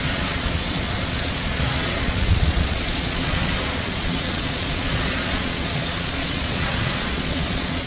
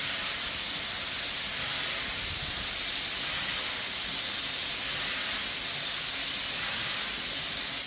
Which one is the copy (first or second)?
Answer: first